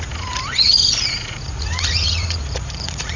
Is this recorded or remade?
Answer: remade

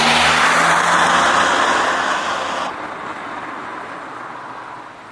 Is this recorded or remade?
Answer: recorded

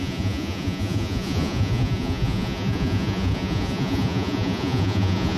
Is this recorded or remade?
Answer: remade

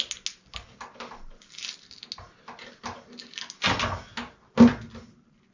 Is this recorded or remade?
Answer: recorded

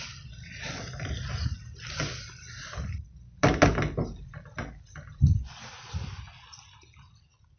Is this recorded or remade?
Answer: recorded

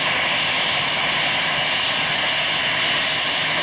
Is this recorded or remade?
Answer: recorded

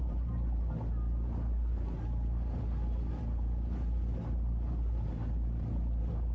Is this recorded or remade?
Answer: recorded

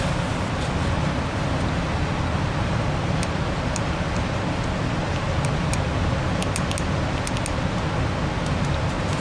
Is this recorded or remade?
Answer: recorded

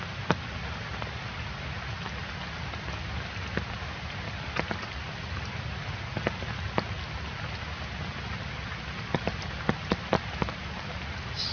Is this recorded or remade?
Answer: recorded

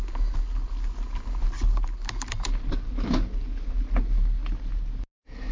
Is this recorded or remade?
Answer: recorded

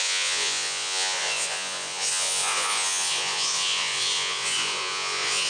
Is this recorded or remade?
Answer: remade